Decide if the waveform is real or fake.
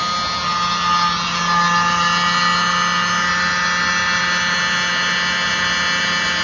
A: real